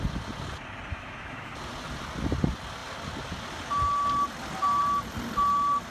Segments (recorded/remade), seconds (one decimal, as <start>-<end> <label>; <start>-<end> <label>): 0.0-0.9 recorded; 0.9-1.5 remade; 1.5-5.9 recorded